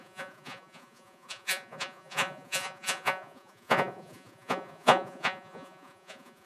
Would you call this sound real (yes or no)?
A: no